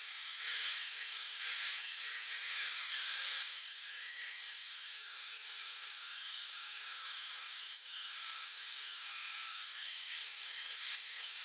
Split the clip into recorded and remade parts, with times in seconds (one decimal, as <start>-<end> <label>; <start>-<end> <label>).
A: 0.0-11.4 remade